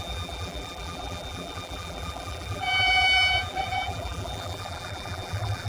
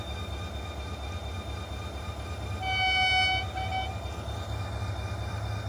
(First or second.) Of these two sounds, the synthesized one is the first